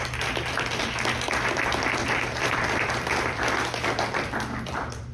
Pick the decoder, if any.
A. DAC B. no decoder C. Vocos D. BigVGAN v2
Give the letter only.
D